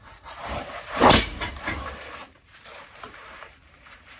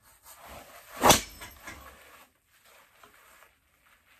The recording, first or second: second